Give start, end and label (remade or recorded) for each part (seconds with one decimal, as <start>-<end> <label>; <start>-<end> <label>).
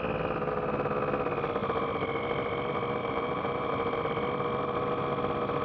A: 0.0-3.0 recorded; 3.0-3.7 remade; 3.7-5.6 recorded